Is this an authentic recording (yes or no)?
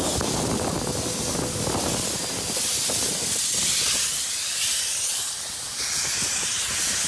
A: yes